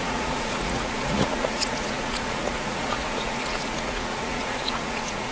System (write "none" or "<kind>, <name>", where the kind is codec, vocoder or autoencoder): vocoder, Vocos